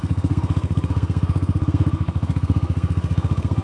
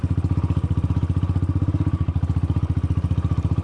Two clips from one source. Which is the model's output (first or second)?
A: first